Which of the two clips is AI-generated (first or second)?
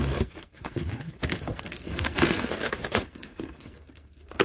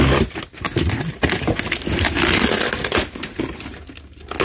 first